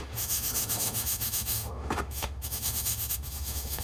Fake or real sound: fake